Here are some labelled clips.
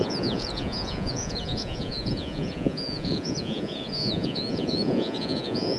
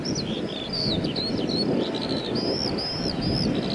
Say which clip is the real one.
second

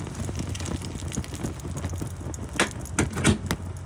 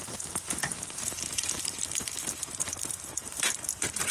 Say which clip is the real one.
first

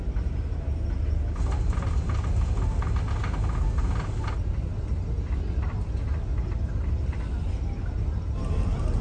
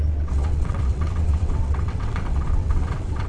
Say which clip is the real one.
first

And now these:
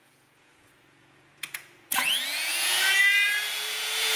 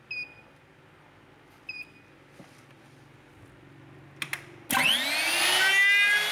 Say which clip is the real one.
second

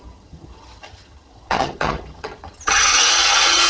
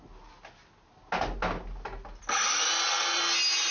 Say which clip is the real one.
second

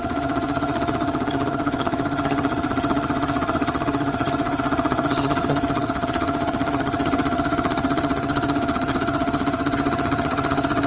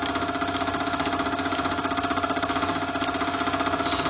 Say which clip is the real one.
second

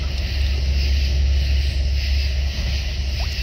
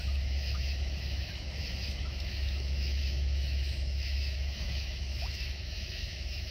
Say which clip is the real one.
first